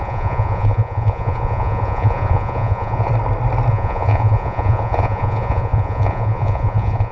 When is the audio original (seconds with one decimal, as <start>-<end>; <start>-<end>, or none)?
3.1-3.7